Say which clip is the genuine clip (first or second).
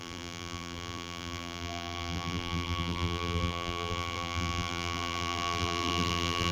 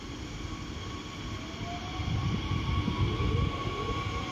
second